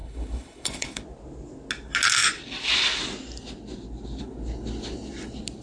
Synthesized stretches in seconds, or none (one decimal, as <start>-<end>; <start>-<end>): 0.0-1.0